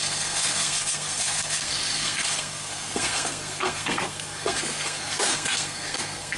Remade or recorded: remade